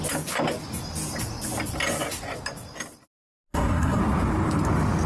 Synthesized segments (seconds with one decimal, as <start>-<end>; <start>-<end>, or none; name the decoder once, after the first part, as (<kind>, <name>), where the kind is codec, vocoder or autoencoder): 3.5-4.0 (codec, SNAC)